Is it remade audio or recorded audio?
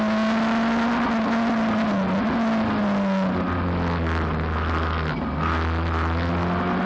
recorded